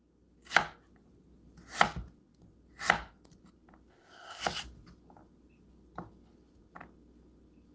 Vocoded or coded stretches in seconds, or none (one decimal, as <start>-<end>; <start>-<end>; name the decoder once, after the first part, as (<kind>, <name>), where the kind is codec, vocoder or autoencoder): 3.9-4.4 (codec, ZipCodec)